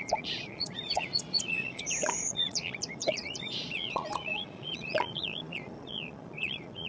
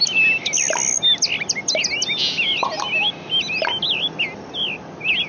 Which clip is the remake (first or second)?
first